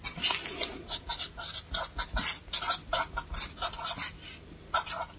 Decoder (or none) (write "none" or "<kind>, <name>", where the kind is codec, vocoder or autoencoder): none